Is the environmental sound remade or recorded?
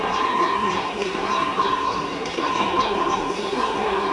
remade